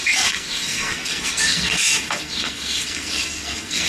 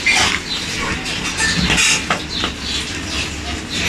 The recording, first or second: second